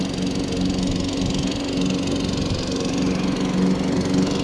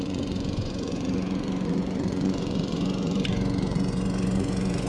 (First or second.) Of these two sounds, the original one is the first